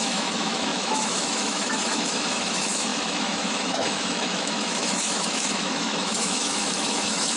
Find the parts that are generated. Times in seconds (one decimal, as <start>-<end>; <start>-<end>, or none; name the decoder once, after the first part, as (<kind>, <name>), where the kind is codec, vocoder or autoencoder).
0.0-7.4 (autoencoder, DAC-VAE)